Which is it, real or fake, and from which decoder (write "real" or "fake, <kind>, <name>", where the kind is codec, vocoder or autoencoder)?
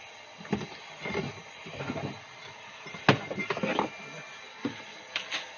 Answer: real